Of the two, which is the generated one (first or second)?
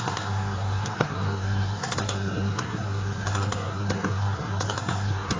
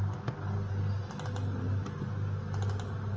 first